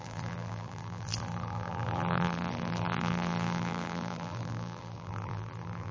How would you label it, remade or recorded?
remade